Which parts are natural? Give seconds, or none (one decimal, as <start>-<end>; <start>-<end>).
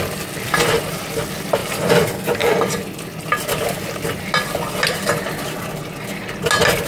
0.0-6.9